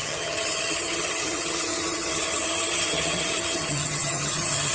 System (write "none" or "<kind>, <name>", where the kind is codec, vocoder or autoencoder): vocoder, HiFi-GAN